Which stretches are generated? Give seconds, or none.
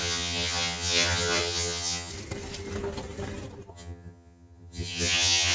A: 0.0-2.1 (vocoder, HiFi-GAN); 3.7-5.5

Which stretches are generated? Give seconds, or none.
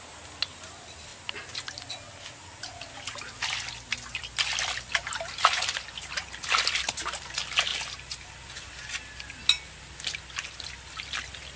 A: none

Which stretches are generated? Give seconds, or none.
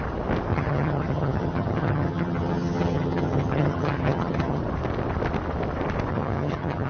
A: 0.5-4.6 (vocoder, HiFi-GAN); 6.1-6.9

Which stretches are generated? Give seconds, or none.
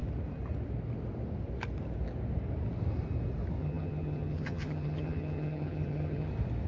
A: 3.6-6.3 (vocoder, HiFi-GAN)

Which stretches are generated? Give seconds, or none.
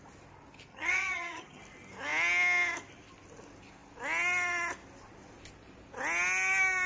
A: 0.7-1.6 (vocoder, HiFi-GAN)